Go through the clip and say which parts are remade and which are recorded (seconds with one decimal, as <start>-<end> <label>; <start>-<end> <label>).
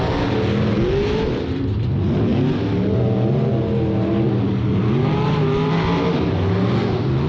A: 0.0-7.3 recorded